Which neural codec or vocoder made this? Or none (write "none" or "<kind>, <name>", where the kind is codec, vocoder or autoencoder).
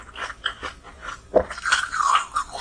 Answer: none